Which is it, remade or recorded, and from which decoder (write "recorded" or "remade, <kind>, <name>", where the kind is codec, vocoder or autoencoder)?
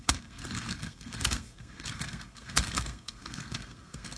remade, codec, SNAC